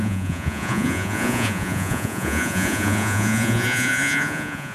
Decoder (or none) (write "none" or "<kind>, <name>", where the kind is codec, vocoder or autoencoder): vocoder, Vocos